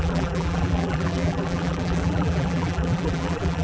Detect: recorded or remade remade